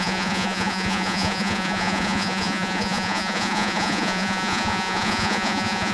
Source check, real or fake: fake